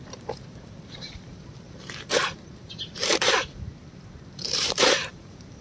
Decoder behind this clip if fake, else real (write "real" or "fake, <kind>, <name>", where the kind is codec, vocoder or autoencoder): fake, vocoder, BigVGAN v2